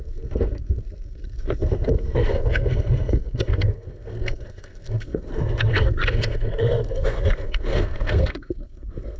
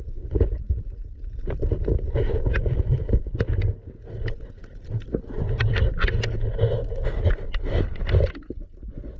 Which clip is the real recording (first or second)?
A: second